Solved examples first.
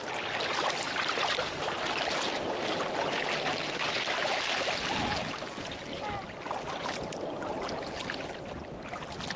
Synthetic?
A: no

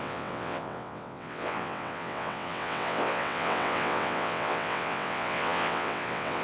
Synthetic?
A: yes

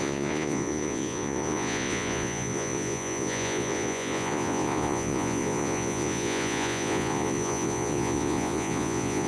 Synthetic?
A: yes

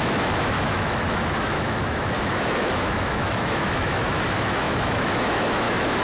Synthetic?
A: yes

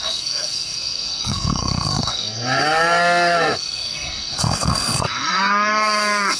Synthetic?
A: yes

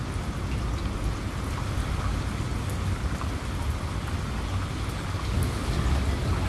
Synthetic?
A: no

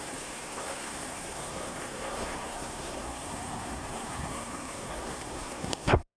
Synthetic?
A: yes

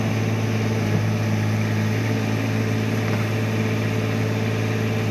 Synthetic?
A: no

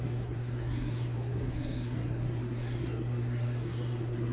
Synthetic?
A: yes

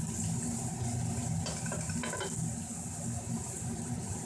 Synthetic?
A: no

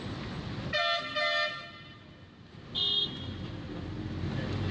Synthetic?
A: no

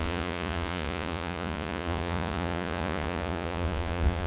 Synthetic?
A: yes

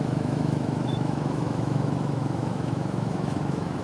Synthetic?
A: yes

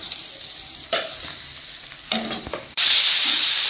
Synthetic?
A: no